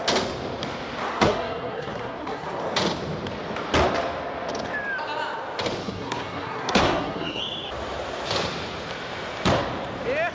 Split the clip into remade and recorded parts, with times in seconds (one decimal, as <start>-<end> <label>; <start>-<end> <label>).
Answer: 0.0-1.1 recorded; 1.1-2.6 remade; 2.6-5.8 recorded; 5.8-7.4 remade; 7.4-10.3 recorded